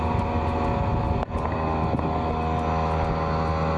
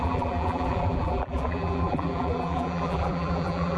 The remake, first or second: second